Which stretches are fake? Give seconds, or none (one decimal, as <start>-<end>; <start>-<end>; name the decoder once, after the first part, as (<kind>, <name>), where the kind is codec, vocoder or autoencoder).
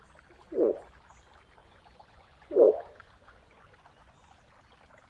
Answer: 1.6-4.4 (vocoder, Vocos)